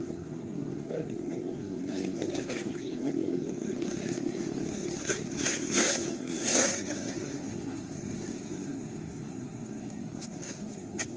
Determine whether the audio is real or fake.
fake